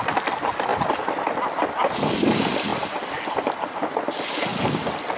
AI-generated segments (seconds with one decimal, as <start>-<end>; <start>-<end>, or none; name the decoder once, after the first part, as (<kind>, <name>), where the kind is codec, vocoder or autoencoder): 0.7-1.9 (vocoder, BigVGAN v2); 2.7-3.4